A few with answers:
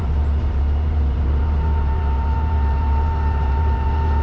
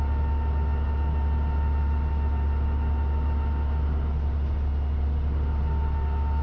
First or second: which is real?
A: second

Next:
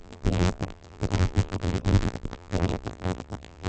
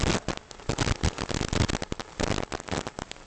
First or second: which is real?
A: second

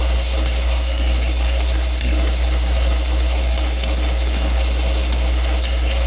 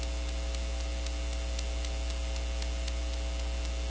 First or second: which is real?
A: second